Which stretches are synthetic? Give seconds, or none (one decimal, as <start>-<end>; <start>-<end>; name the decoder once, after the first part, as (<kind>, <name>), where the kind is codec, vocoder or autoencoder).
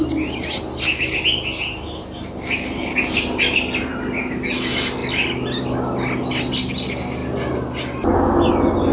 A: none